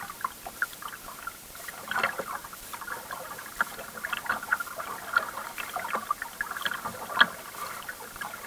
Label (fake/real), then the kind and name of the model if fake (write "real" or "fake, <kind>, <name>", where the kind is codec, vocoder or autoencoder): real